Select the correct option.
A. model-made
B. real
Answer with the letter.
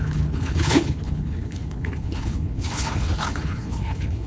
A